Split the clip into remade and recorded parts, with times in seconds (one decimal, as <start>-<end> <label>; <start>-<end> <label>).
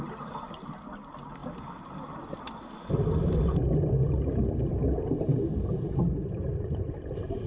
0.0-7.5 recorded